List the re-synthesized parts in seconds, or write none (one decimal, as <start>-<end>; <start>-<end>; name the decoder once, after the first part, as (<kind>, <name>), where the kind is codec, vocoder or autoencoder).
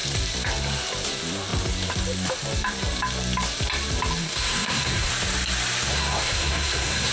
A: 4.2-5.1 (codec, SNAC); 5.9-7.1